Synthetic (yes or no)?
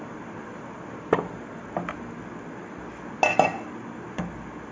no